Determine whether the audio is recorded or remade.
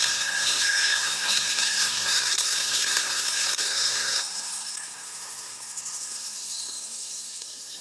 remade